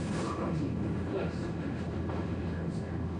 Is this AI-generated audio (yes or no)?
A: yes